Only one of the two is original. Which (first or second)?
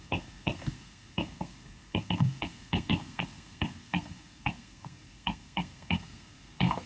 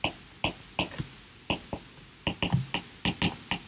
second